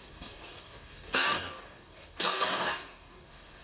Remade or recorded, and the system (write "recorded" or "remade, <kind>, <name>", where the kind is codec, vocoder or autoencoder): remade, codec, DAC